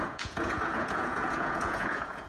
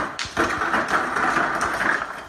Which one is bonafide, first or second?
second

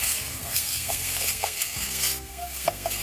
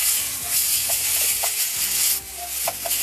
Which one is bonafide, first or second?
second